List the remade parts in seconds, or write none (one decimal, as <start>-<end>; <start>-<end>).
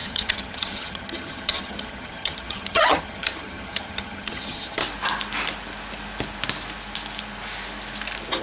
0.0-4.8